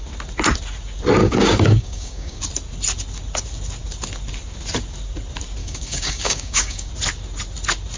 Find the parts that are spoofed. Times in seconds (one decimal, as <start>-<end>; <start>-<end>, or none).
1.2-2.4; 5.6-6.9